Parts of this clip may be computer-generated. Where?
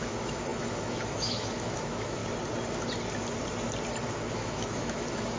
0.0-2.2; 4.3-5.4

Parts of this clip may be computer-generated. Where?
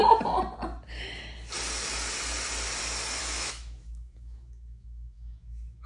3.2-5.9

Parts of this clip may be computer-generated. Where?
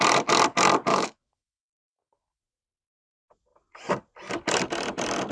0.9-2.4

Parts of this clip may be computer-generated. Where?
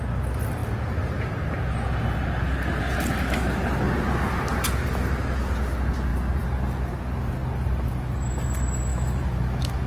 8.9-9.9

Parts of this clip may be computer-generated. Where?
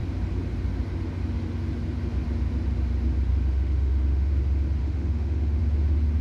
3.3-4.3; 4.8-5.6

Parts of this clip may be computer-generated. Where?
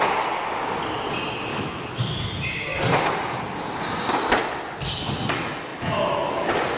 1.5-2.3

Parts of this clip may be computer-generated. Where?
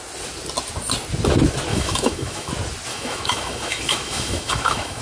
1.7-2.5; 2.9-5.0